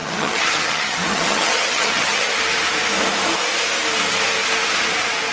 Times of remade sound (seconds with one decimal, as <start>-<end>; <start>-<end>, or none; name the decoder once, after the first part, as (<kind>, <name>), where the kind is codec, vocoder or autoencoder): 0.0-2.4 (vocoder, HiFi-GAN)